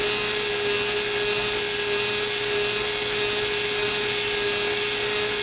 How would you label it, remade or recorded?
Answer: recorded